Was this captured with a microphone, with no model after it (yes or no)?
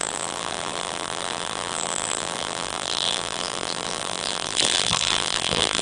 no